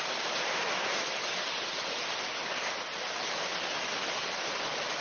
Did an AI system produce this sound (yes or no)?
no